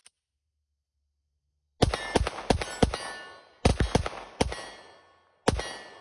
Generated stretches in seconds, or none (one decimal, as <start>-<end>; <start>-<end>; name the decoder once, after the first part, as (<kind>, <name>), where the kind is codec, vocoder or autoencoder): none